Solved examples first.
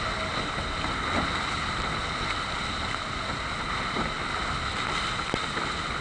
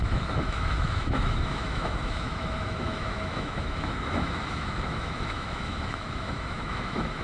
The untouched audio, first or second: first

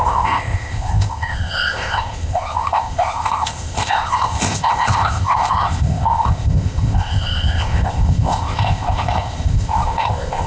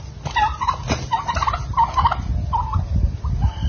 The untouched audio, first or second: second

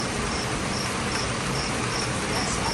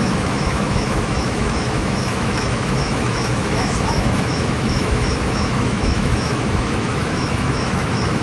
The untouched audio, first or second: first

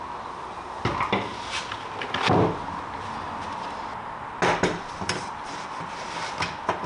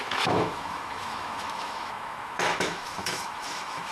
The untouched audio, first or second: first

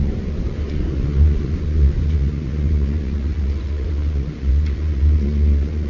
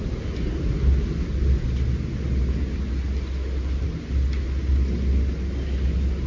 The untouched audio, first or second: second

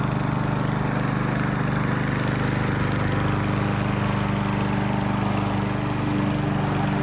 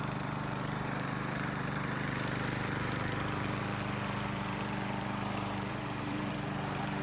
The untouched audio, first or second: first